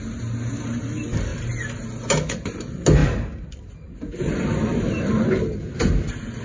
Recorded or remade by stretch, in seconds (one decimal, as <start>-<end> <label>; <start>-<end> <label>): 0.0-3.0 recorded; 3.0-6.4 remade